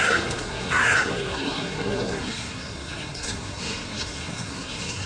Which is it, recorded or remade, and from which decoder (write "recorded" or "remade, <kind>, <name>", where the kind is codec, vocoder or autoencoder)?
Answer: remade, codec, SNAC